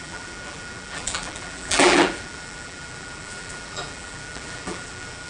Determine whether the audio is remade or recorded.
remade